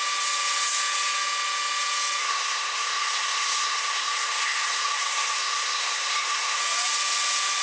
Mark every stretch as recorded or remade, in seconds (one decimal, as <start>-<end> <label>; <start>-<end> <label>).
0.0-2.2 recorded; 2.2-6.6 remade; 6.6-7.6 recorded